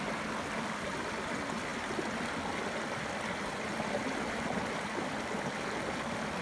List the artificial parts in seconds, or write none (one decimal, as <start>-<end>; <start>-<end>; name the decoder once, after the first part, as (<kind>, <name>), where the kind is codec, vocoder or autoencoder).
none